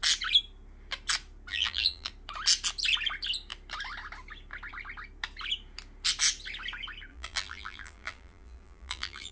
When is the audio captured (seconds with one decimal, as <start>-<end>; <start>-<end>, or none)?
0.0-1.5; 2.1-7.1